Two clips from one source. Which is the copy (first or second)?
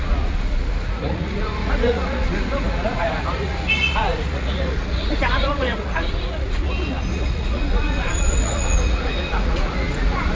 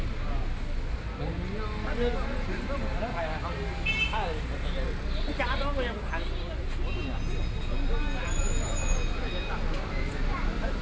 first